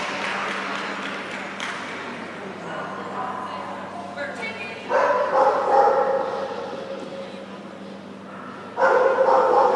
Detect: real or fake real